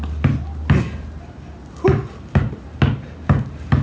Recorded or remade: recorded